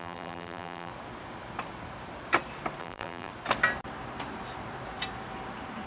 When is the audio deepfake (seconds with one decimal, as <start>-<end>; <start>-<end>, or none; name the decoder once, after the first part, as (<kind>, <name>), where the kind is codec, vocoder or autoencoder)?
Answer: 0.0-0.9 (vocoder, BigVGAN v2); 2.8-3.3